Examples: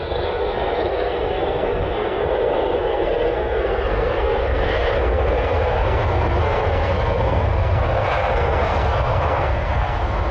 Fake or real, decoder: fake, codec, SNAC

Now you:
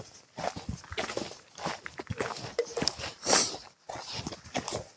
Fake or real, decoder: real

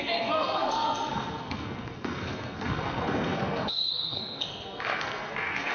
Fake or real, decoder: fake, codec, SNAC